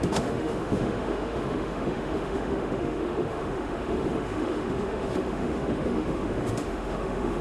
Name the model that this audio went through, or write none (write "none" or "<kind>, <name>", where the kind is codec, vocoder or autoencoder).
autoencoder, DAC-VAE